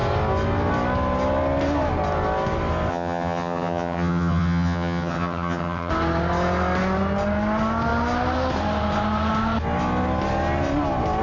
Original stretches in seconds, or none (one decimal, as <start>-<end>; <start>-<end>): 0.0-2.9; 5.9-11.2

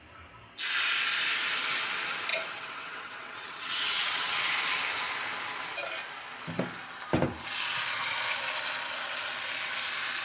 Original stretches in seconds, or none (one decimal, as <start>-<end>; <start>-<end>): 0.0-2.3; 4.5-10.2

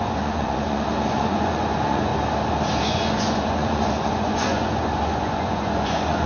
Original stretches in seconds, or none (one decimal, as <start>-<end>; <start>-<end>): 2.1-2.8

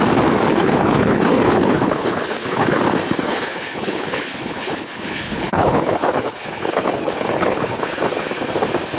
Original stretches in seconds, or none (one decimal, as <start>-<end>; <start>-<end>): 0.0-0.5; 2.8-3.2; 8.0-9.0

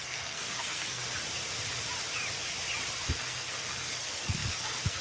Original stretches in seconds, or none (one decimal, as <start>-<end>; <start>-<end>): 1.0-3.1

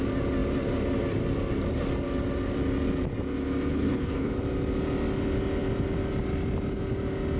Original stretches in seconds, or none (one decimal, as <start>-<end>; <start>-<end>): 0.0-3.7; 4.3-7.4